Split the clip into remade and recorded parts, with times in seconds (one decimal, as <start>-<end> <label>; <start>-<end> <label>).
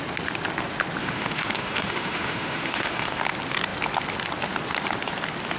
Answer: 0.0-1.0 recorded; 1.0-3.2 remade; 3.2-5.6 recorded